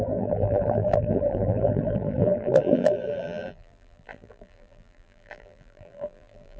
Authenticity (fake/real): fake